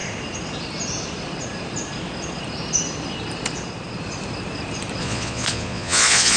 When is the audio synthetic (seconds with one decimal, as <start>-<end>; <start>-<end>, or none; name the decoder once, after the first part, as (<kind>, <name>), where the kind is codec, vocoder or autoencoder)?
5.0-6.4 (vocoder, Vocos)